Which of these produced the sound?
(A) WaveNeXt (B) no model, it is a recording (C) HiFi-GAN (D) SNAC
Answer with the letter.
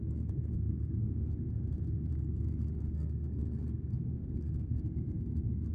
D